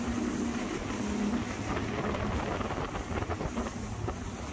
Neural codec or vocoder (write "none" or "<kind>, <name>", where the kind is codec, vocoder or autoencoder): none